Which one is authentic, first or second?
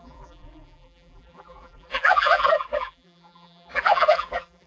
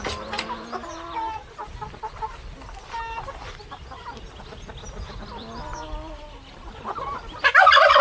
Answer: second